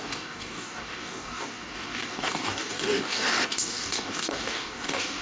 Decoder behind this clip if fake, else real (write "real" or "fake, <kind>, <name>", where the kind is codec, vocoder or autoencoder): fake, codec, DAC